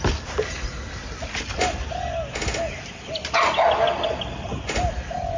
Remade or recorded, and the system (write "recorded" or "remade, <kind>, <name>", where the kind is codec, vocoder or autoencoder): recorded